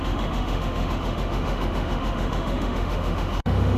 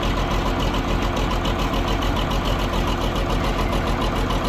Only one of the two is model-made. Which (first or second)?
first